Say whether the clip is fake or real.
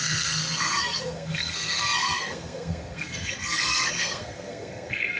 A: fake